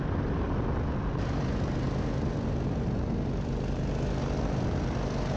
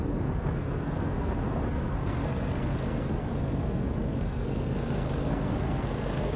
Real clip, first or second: first